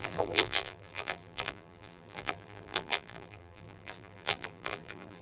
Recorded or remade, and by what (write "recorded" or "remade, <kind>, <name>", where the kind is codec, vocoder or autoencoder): remade, vocoder, BigVGAN v2